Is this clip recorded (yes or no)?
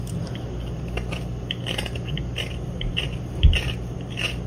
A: yes